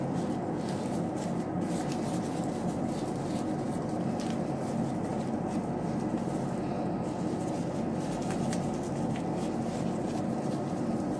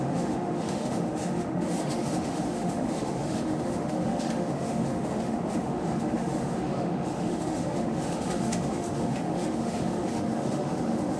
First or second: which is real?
first